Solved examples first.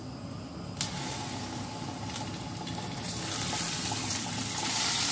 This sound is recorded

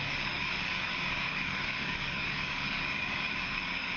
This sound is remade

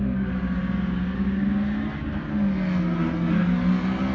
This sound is recorded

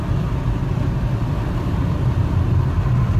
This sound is recorded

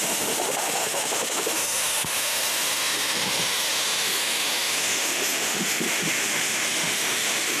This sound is remade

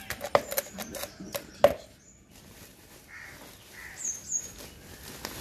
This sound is recorded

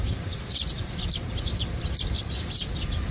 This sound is recorded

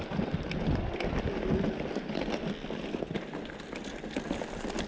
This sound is recorded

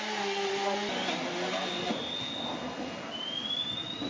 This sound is recorded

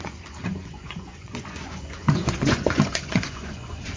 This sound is remade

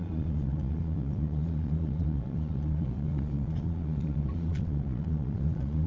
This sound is remade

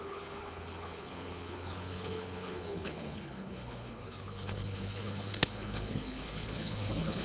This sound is remade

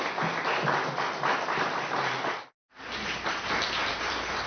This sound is recorded